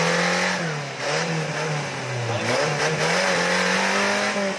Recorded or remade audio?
recorded